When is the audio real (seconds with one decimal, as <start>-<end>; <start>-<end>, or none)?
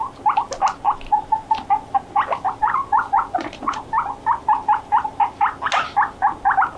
0.0-2.6; 3.8-6.8